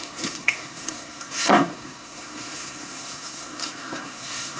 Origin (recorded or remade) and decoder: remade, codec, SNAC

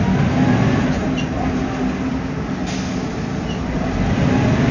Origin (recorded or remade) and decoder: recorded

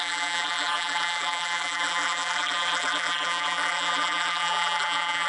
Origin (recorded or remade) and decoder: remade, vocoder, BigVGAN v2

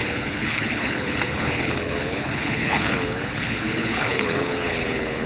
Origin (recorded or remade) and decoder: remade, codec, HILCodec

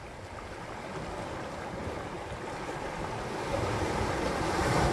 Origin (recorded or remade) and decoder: recorded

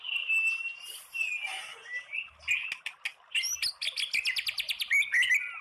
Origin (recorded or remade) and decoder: recorded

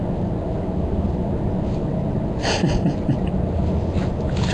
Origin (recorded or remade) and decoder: recorded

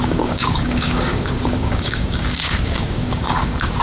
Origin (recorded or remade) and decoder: remade, codec, DAC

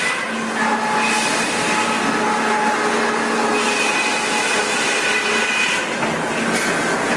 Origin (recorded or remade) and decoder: recorded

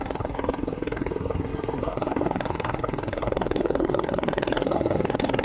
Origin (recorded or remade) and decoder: remade, codec, SNAC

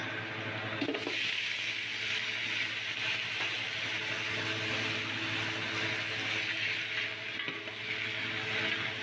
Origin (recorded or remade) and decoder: recorded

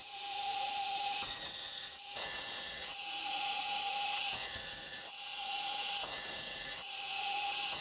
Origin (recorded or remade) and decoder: remade, vocoder, Vocos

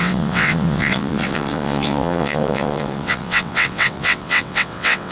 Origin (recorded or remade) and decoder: remade, vocoder, WaveNeXt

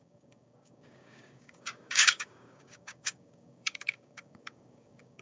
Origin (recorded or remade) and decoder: remade, codec, DAC